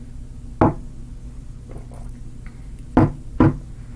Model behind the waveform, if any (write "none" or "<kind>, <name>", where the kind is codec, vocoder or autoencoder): none